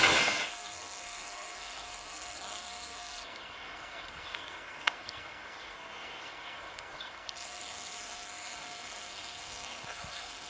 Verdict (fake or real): fake